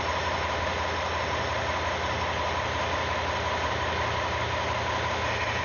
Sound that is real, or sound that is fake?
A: real